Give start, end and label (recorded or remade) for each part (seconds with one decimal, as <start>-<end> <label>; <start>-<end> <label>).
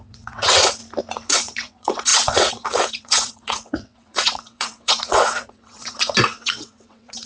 0.0-0.8 remade; 0.8-1.3 recorded; 1.3-7.3 remade